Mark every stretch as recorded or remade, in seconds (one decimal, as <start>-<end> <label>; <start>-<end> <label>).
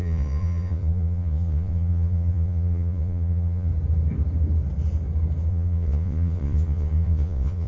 0.0-3.7 remade; 3.7-5.5 recorded; 5.5-7.7 remade